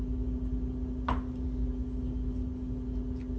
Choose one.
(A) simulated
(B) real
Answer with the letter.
B